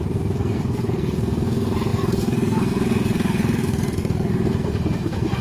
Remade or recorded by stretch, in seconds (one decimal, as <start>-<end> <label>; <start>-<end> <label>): 0.0-5.4 remade